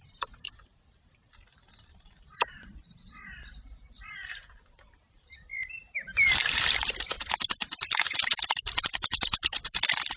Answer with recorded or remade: remade